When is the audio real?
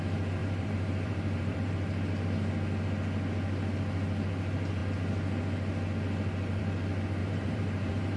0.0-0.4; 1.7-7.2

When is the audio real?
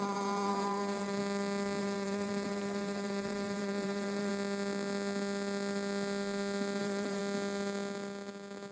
1.2-1.8; 4.3-6.8; 7.2-8.7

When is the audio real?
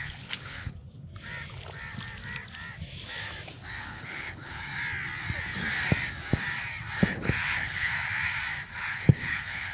1.1-3.8; 4.7-7.1; 7.9-8.7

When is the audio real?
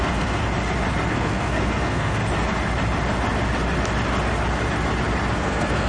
0.4-1.1; 2.2-5.3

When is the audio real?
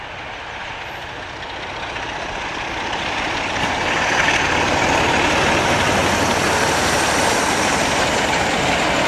6.0-6.8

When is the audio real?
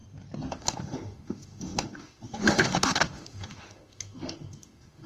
0.0-0.5